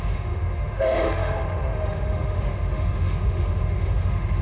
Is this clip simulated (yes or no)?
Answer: yes